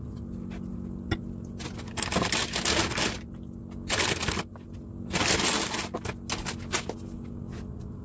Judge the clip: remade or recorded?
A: recorded